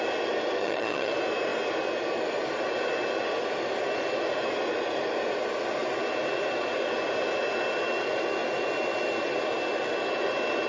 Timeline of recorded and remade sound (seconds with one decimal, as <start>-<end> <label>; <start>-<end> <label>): 0.0-0.6 recorded; 0.6-1.1 remade; 1.1-10.7 recorded

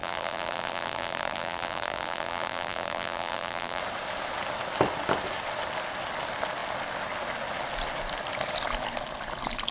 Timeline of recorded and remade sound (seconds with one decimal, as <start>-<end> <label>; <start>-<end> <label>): 0.0-3.8 remade; 3.8-9.7 recorded

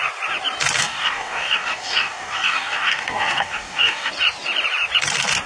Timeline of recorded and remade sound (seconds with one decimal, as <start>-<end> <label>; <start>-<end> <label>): 0.0-0.8 recorded; 0.8-4.1 remade; 4.1-5.5 recorded

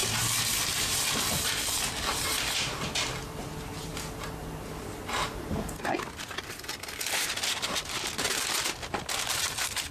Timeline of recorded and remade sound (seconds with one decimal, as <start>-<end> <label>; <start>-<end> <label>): 0.0-9.9 recorded

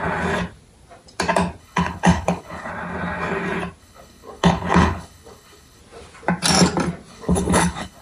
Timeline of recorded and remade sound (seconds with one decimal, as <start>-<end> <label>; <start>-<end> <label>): 0.0-1.6 recorded; 1.6-2.7 remade; 2.7-3.8 recorded; 3.8-5.8 remade; 5.8-7.1 recorded; 7.1-8.0 remade

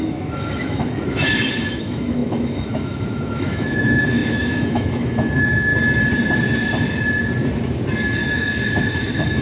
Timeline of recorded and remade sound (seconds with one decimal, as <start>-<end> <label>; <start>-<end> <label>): 0.0-5.7 remade; 5.7-8.0 recorded; 8.0-9.4 remade

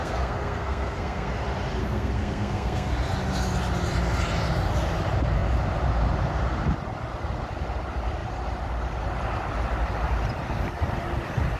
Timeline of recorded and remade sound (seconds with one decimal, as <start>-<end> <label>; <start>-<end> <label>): 0.0-1.3 remade; 1.3-1.8 recorded; 1.8-2.9 remade; 2.9-11.6 recorded